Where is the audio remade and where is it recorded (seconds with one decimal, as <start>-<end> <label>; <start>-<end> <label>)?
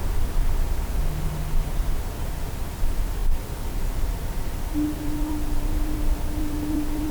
0.0-1.6 recorded; 1.6-7.1 remade